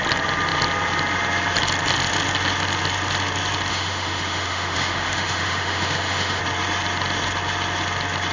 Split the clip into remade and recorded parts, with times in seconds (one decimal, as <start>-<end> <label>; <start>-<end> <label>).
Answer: 0.0-3.7 recorded; 3.7-6.4 remade; 6.4-8.3 recorded